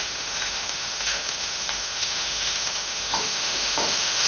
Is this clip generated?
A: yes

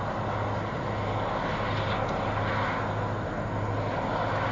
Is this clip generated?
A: no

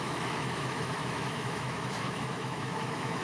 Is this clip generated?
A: yes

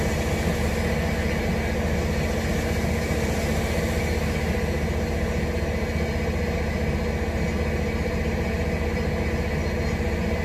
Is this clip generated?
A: no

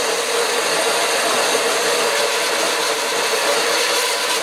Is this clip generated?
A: no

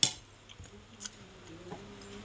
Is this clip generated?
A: no